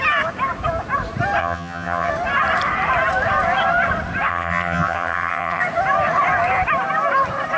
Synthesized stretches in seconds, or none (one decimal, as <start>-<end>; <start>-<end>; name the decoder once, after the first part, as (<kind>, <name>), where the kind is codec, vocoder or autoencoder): 1.4-2.1 (vocoder, HiFi-GAN); 4.3-5.6